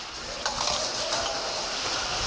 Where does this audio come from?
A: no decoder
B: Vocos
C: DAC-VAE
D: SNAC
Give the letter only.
A